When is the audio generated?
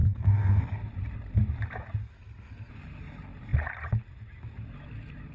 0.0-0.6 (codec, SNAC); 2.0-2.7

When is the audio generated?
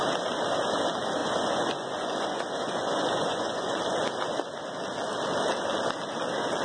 1.2-3.8 (vocoder, Vocos)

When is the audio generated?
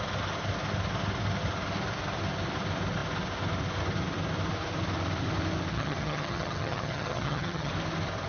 5.7-7.7 (vocoder, HiFi-GAN)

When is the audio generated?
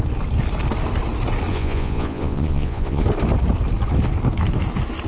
1.5-3.0 (vocoder, Vocos)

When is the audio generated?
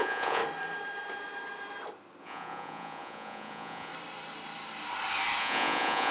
0.0-0.4 (vocoder, Vocos); 2.2-3.9; 5.4-6.1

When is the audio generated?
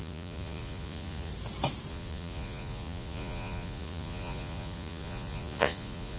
0.0-1.3 (vocoder, Vocos); 1.9-6.2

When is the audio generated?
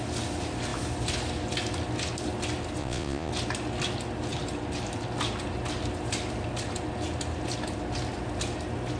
2.8-3.3 (vocoder, Vocos)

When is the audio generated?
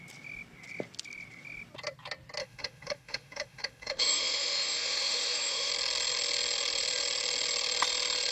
2.4-5.7 (autoencoder, DAC-VAE)